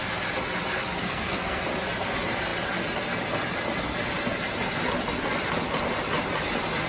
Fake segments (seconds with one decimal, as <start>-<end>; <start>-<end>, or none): 1.0-1.6